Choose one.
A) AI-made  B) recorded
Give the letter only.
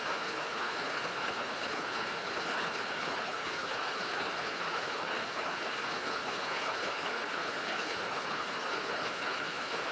A